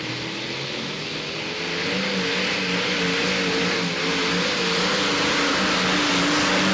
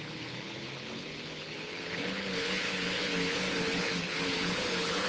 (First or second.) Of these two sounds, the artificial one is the second